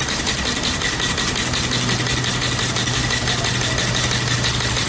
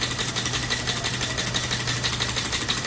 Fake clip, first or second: first